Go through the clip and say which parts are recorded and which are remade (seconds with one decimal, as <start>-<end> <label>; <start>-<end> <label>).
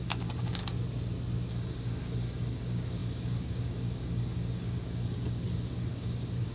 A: 0.0-0.6 remade; 0.6-1.5 recorded; 1.5-6.5 remade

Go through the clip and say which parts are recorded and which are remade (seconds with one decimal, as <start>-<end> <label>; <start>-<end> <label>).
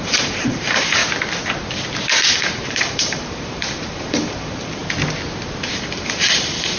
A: 0.0-1.0 remade; 1.0-2.3 recorded; 2.3-4.8 remade; 4.8-5.7 recorded; 5.7-6.8 remade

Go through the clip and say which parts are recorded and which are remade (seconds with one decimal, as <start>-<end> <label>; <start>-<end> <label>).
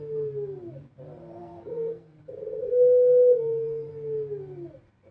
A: 0.0-1.4 recorded; 1.4-2.2 remade; 2.2-2.6 recorded; 2.6-3.9 remade; 3.9-5.1 recorded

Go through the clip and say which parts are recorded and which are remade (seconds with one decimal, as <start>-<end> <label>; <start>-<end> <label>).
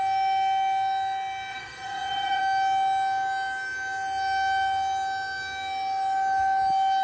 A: 0.0-1.5 recorded; 1.5-2.4 remade; 2.4-7.0 recorded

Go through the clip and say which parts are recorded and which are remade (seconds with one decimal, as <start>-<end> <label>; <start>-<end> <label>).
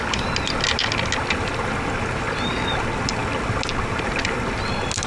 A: 0.0-5.1 recorded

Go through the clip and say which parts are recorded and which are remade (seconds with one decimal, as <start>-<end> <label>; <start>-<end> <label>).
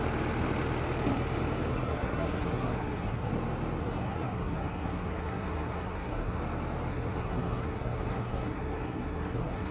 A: 0.0-1.7 recorded; 1.7-3.3 remade; 3.3-3.8 recorded; 3.8-6.4 remade; 6.4-6.9 recorded; 6.9-9.7 remade